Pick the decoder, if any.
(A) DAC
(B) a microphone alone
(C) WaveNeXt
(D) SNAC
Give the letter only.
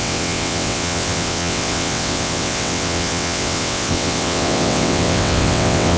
C